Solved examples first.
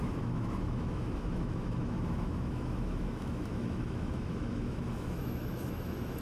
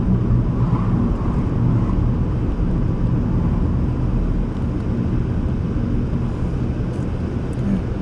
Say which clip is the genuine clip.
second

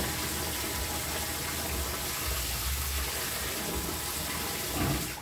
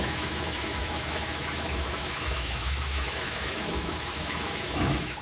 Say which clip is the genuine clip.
first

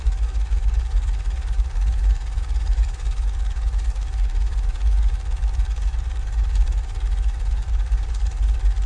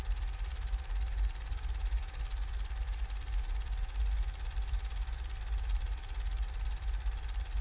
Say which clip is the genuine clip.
second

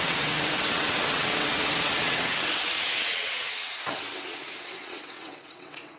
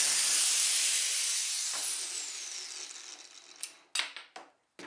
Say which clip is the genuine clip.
second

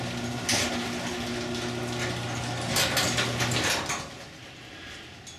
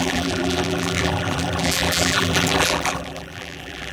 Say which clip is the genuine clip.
first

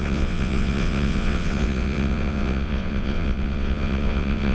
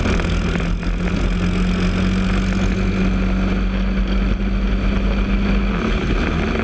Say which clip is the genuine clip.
second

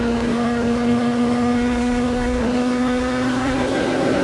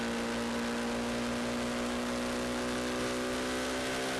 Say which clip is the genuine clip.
second